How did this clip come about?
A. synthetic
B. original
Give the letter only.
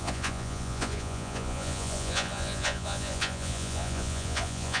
A